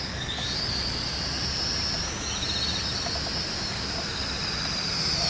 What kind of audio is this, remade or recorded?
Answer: recorded